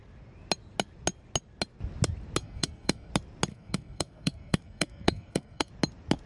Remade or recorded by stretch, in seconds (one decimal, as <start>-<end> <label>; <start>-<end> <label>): 0.0-2.4 recorded; 2.4-3.1 remade; 3.1-3.5 recorded; 3.5-5.7 remade; 5.7-6.3 recorded